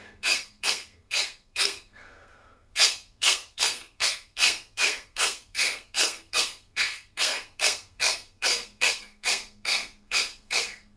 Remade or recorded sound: remade